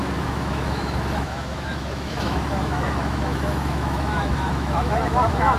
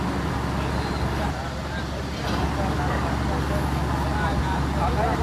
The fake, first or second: first